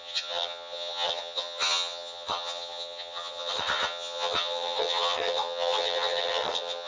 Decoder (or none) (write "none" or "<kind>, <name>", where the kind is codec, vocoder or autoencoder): vocoder, HiFi-GAN